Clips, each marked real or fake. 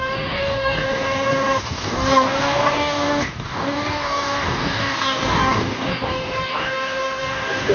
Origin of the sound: fake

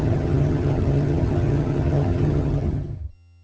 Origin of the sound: fake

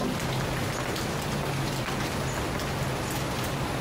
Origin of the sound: real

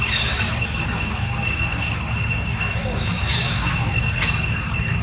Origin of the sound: fake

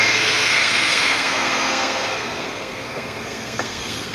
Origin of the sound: fake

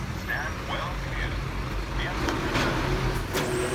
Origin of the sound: real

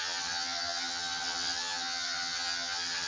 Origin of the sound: fake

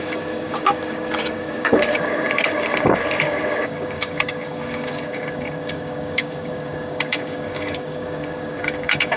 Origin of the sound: fake